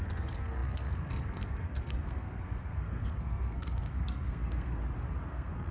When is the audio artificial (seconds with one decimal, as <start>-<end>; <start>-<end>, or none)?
0.0-4.8; 5.3-5.7